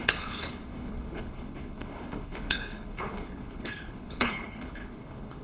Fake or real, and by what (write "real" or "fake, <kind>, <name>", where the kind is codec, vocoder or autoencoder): fake, codec, HILCodec